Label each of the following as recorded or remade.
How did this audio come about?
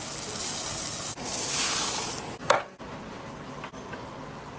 recorded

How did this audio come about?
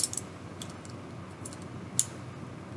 recorded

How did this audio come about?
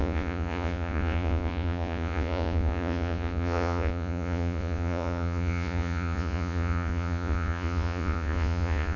remade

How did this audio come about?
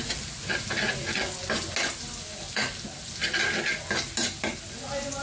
recorded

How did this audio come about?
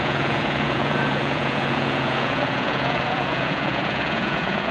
remade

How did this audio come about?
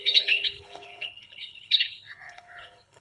remade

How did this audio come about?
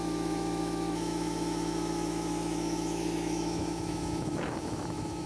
remade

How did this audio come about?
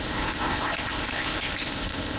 remade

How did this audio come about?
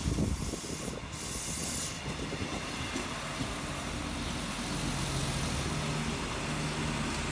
recorded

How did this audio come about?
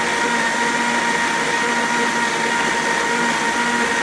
recorded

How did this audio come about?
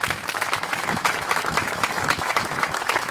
remade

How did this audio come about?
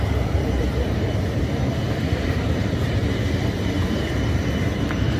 remade